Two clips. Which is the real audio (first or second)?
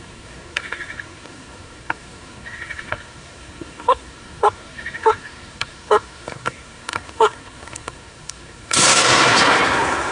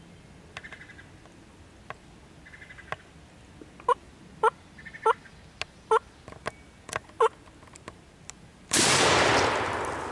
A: second